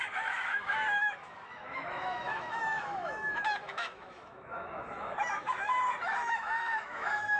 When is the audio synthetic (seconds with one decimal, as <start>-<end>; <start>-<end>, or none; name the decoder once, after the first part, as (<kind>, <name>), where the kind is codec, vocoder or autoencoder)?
0.0-7.4 (autoencoder, DAC-VAE)